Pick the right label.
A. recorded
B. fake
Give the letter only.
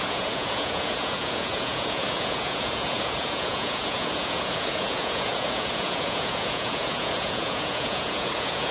B